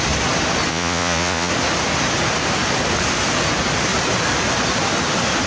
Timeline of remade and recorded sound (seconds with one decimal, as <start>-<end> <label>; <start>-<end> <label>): 0.0-0.7 recorded; 0.7-1.5 remade; 1.5-5.5 recorded